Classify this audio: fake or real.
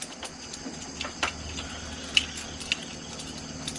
real